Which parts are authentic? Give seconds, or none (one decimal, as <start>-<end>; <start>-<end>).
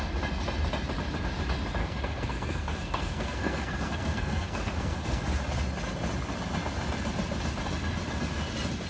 0.0-1.8; 5.2-8.9